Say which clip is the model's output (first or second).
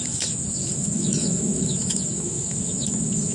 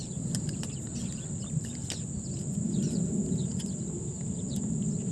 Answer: first